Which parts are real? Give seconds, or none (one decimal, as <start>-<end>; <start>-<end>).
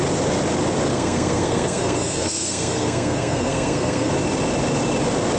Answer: 0.0-0.9; 4.1-5.4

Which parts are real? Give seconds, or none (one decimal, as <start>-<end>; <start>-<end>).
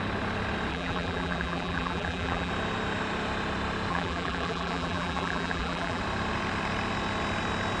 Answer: 0.0-0.7; 2.5-3.9; 6.0-7.8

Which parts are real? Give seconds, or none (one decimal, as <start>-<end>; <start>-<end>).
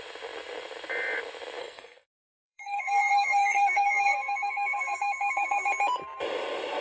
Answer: 0.0-1.6; 5.7-6.8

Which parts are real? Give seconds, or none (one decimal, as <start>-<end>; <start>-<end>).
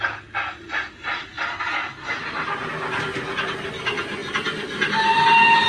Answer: 0.0-5.7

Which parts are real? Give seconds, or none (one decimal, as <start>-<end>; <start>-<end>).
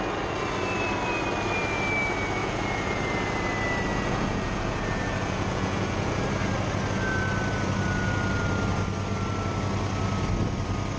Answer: 0.0-2.4; 3.0-3.9; 6.2-11.0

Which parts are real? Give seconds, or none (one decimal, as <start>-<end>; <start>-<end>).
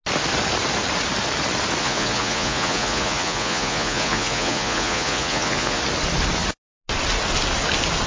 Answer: 0.0-1.8; 5.8-8.1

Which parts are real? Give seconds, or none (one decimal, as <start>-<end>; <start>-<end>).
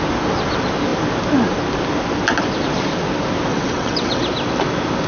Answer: 0.0-3.5; 4.2-5.1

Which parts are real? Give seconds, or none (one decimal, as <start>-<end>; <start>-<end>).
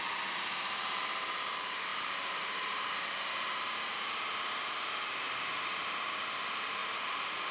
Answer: none